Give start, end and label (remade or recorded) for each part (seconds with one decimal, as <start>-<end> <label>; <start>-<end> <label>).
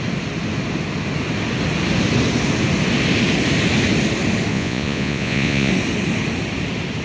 0.0-4.5 recorded; 4.5-5.7 remade; 5.7-7.0 recorded